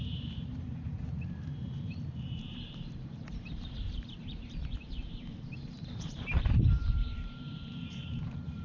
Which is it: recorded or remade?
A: remade